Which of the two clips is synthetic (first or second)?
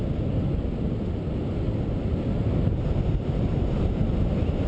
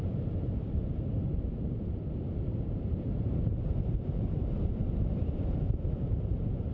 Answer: second